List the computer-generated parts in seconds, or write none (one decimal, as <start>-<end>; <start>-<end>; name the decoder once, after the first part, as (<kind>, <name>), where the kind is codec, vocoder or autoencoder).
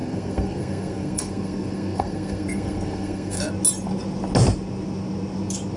0.0-3.5 (codec, SNAC)